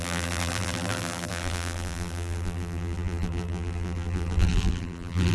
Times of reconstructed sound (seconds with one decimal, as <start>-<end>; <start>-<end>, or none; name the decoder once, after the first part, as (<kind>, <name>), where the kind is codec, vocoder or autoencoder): 0.0-5.3 (vocoder, BigVGAN v2)